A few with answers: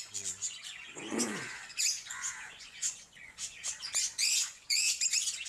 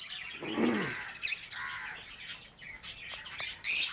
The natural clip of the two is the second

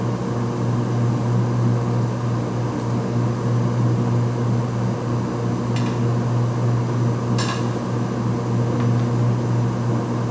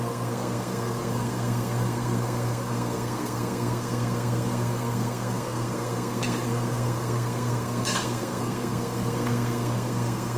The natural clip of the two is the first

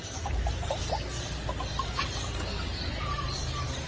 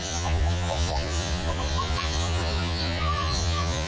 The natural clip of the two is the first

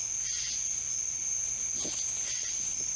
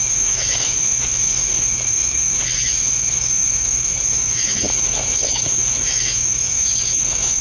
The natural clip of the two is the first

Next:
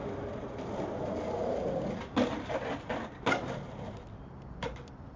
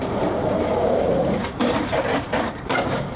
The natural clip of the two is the first